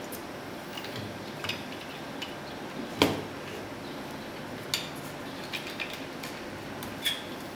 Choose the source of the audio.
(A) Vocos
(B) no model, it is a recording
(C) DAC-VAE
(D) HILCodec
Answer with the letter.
B